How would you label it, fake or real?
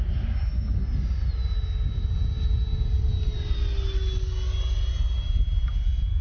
real